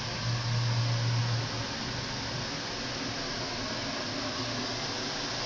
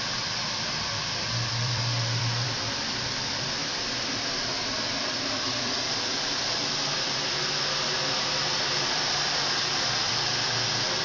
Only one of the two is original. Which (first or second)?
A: first